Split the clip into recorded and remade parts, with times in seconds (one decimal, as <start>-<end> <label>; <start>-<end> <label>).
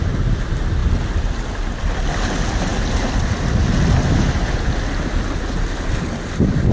0.0-6.7 recorded